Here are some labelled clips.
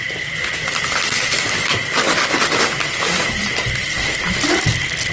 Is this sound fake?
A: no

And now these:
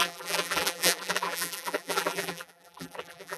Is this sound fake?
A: yes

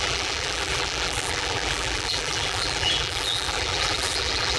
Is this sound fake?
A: yes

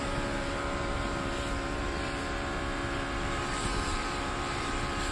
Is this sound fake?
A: yes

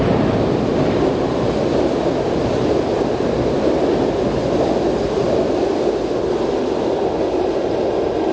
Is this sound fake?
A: no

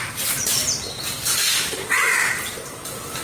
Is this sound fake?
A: yes